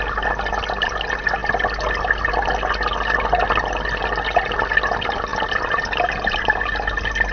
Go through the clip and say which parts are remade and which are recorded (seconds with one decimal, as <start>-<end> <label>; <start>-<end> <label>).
0.0-7.3 recorded